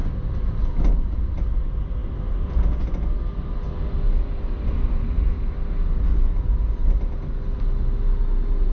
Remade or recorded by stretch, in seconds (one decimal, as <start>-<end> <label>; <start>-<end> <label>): 0.0-8.7 recorded